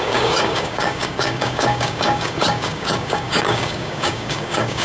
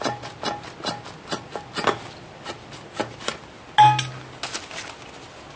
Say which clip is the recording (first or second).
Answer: second